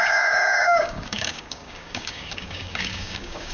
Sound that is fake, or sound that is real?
fake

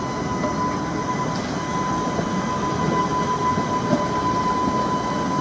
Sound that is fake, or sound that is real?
real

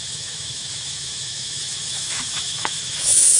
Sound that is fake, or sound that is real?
fake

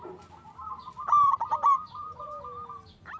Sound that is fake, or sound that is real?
real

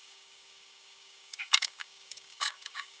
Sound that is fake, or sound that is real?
fake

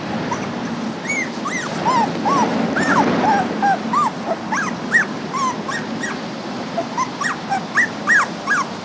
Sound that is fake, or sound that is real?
real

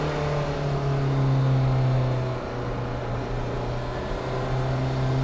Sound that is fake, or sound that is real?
real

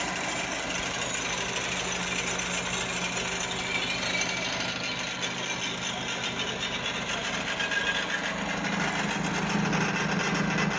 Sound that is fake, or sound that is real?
real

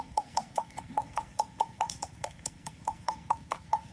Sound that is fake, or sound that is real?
fake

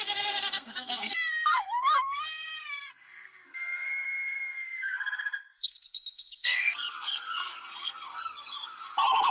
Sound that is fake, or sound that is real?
fake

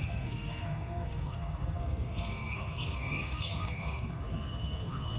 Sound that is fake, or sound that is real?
fake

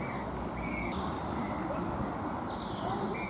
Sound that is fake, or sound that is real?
real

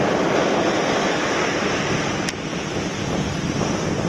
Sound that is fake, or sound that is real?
real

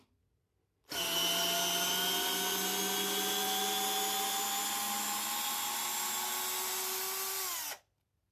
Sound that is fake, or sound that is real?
real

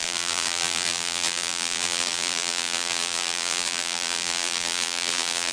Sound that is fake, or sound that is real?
fake